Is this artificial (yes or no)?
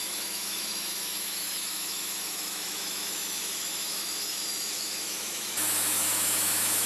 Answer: yes